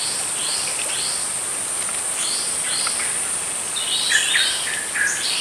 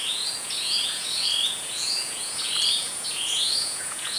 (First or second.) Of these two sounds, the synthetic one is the second